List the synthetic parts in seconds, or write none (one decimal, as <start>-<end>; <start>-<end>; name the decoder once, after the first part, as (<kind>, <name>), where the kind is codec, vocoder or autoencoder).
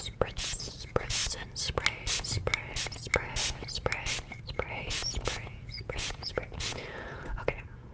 0.0-1.2 (vocoder, Vocos); 4.7-7.9